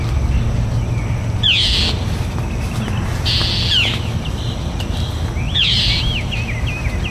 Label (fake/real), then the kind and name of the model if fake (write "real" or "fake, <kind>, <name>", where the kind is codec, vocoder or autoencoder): real